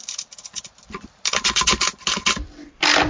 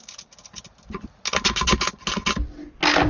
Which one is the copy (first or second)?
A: first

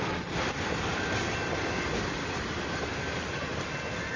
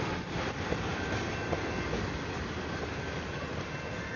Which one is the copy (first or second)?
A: first